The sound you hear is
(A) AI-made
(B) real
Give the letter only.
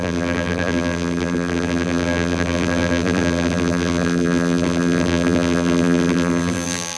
A